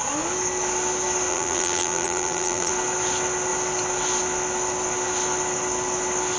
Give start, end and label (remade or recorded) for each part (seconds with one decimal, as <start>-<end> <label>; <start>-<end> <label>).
0.0-1.3 recorded; 1.3-2.7 remade; 2.7-6.4 recorded

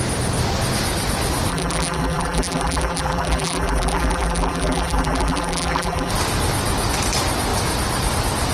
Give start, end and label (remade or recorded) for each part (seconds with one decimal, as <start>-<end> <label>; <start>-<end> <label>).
0.0-1.5 recorded; 1.5-6.1 remade; 6.1-8.5 recorded

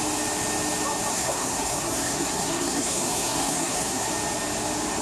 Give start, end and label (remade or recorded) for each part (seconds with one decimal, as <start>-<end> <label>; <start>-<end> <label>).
0.0-1.1 recorded; 1.1-4.1 remade; 4.1-5.0 recorded

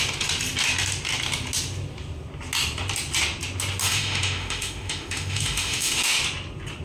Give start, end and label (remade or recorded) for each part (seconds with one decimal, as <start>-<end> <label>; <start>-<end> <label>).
0.0-3.8 recorded; 3.8-6.2 remade; 6.2-6.8 recorded

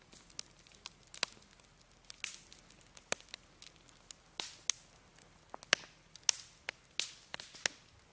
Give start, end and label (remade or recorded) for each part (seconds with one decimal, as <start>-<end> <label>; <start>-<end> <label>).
0.0-8.1 recorded

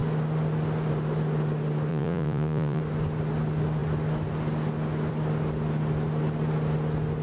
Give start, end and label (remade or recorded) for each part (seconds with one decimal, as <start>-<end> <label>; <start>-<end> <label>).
0.0-1.9 recorded; 1.9-2.8 remade; 2.8-7.2 recorded

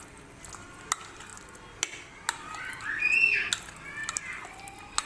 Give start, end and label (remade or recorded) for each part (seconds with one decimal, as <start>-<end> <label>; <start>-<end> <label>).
0.0-5.1 recorded